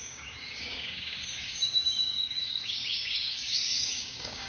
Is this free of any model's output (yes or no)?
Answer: no